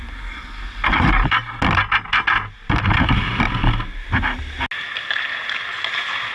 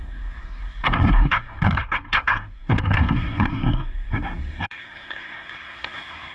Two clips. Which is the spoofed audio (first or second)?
second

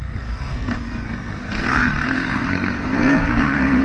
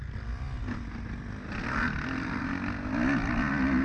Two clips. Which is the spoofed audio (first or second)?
first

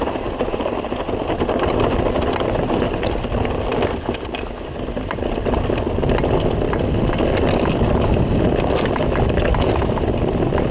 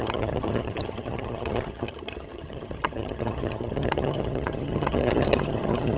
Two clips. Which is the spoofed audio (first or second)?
second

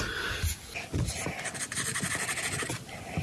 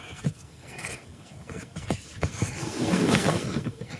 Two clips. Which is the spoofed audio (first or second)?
second